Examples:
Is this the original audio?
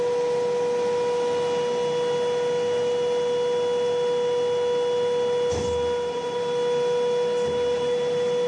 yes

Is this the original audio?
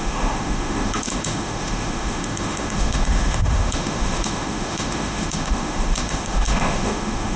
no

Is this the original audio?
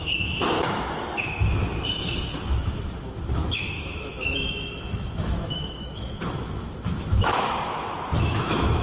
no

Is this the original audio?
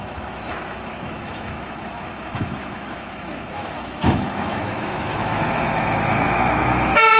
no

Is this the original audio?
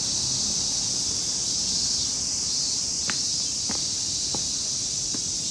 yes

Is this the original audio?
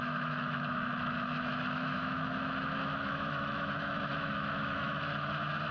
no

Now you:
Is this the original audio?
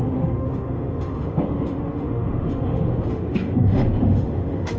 no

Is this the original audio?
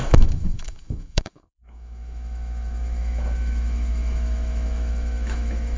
no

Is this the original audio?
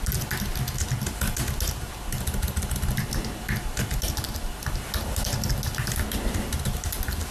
yes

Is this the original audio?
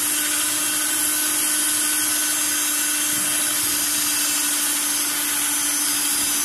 yes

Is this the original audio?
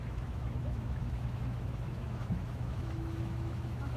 no